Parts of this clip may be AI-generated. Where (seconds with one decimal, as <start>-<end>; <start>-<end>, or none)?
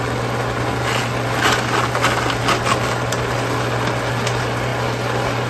none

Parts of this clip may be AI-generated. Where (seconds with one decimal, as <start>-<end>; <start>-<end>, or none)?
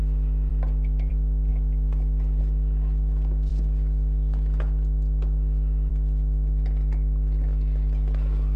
none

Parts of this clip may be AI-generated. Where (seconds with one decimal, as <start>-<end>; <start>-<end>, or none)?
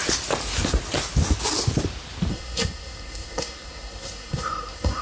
2.3-5.0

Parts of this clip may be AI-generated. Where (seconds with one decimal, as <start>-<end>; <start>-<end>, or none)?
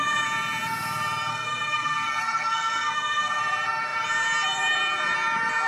1.3-3.4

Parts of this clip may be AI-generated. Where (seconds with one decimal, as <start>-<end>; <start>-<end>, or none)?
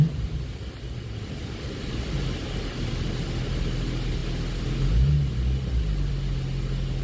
none